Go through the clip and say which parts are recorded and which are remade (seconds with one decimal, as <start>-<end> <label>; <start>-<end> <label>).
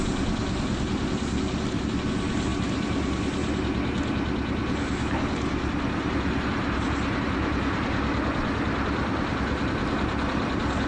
0.0-10.9 recorded